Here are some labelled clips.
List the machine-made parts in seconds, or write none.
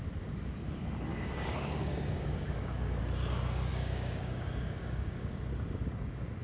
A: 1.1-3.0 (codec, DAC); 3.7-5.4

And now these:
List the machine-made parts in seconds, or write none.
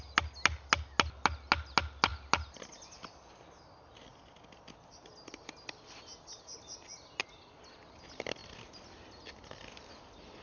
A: none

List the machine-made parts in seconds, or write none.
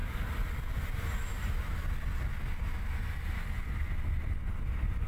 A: none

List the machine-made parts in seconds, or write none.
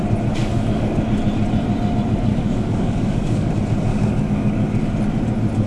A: 0.4-1.0 (codec, DAC); 2.3-3.5; 3.9-4.9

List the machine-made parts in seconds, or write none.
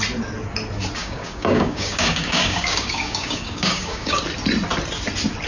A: 1.0-4.2 (codec, DAC)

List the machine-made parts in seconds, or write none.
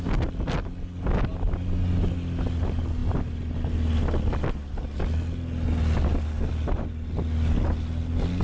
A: none